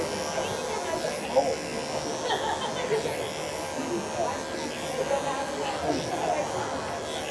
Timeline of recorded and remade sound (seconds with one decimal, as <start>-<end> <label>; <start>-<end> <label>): 0.0-7.3 recorded